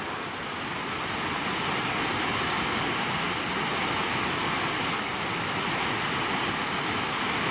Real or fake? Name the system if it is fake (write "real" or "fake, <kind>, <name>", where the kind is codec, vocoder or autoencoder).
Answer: real